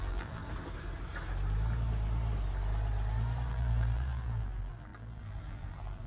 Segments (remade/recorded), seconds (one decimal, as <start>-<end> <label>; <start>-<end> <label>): 0.0-0.4 remade; 0.4-3.5 recorded; 3.5-6.1 remade